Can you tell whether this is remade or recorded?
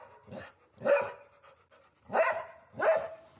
recorded